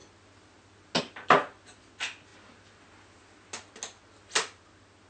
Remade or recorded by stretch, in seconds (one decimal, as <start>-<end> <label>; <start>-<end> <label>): 0.0-5.1 recorded